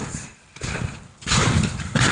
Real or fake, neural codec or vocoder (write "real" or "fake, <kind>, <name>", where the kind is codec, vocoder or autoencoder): real